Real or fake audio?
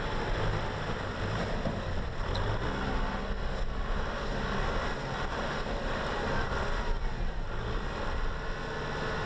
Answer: real